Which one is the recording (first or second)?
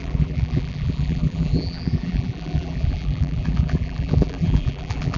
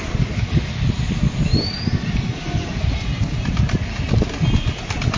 second